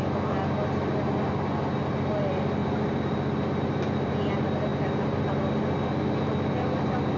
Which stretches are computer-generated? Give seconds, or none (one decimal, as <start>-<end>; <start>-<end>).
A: none